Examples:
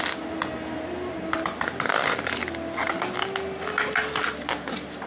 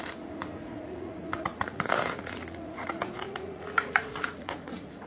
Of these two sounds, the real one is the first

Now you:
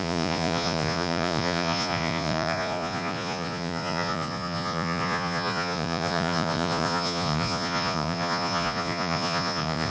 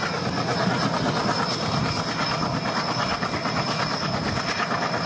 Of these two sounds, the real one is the second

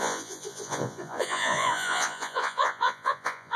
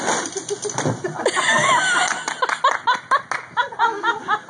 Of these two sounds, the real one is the second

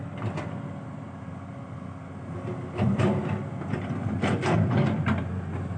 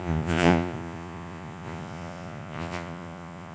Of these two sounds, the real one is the first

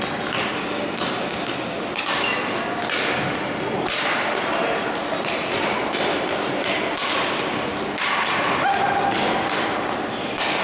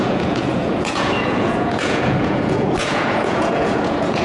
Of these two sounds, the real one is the first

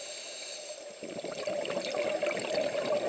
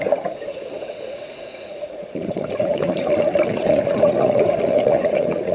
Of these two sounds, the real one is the first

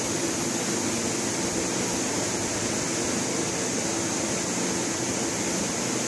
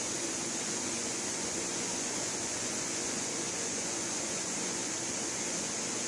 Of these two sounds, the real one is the first